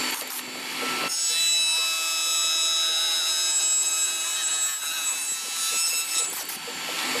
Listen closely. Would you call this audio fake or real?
real